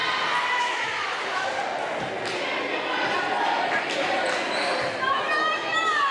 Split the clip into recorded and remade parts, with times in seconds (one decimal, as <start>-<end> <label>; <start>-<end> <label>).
0.0-0.6 recorded; 0.6-1.3 remade; 1.3-4.8 recorded; 4.8-6.1 remade